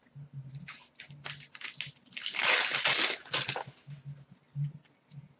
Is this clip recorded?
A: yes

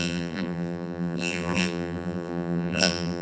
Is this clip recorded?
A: no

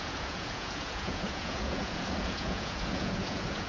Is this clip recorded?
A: no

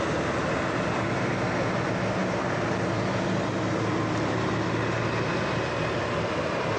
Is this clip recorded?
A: yes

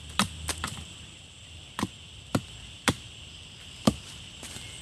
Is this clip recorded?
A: no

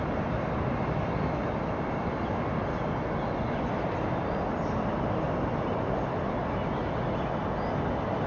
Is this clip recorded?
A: yes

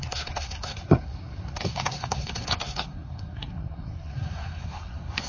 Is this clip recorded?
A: no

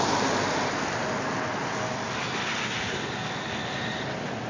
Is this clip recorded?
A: yes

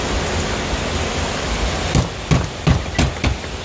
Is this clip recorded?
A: yes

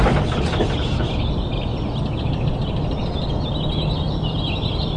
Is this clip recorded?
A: yes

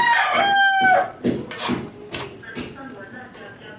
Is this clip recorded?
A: yes